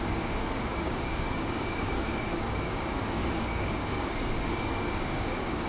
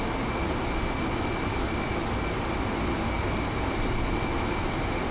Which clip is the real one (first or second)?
second